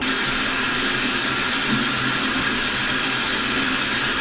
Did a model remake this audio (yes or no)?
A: no